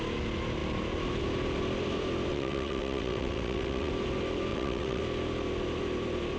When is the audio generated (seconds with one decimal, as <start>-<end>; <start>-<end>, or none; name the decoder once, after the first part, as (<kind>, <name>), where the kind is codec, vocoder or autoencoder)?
2.3-3.9 (vocoder, WaveNeXt); 4.5-5.0